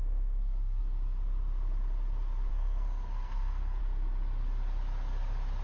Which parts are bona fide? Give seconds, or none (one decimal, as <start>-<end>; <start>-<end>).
0.8-2.5; 3.8-5.6